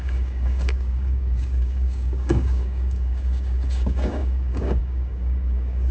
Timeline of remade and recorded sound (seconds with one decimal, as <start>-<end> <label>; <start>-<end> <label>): 0.0-5.9 remade